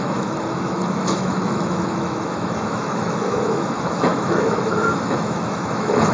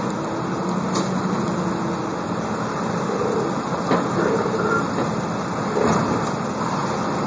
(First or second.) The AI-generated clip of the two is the first